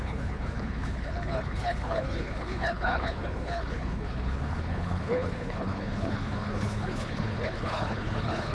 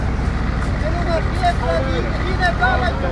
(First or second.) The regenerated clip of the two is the first